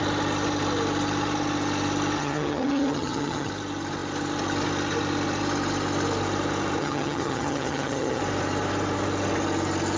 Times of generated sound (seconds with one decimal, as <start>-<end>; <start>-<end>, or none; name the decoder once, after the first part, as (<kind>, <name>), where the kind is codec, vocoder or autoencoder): 2.2-3.5 (vocoder, HiFi-GAN); 6.8-8.2